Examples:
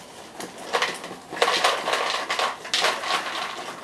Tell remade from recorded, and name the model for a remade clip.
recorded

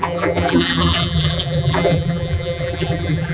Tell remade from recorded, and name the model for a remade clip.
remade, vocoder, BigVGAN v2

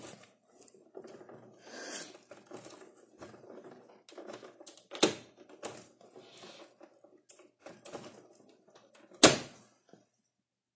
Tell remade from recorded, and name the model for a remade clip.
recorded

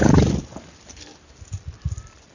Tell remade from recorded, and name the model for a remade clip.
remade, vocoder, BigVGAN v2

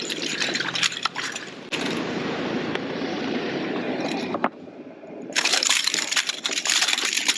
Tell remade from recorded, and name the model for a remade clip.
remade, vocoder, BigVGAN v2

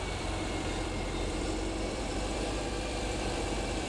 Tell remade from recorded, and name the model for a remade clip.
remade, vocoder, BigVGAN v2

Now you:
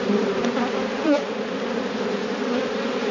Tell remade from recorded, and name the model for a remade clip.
remade, vocoder, BigVGAN v2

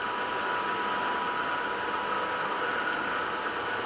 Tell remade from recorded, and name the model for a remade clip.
recorded